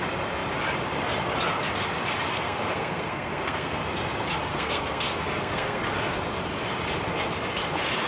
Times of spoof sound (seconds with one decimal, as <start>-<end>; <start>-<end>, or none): 2.3-3.8; 4.5-5.8